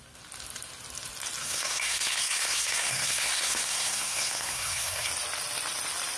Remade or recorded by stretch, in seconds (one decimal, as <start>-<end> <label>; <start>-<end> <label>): 0.0-1.4 recorded; 1.4-5.1 remade; 5.1-6.2 recorded